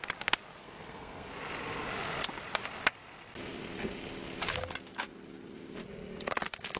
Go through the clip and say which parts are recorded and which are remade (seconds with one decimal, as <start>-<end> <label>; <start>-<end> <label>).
0.0-0.6 recorded; 0.6-1.3 remade; 1.3-6.8 recorded